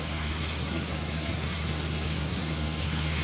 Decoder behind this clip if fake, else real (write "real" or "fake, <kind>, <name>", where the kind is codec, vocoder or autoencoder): fake, codec, SNAC